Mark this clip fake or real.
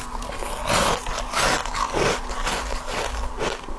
real